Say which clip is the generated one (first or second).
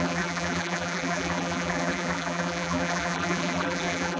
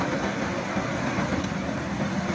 first